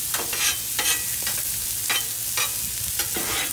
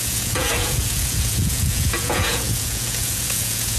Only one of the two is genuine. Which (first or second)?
first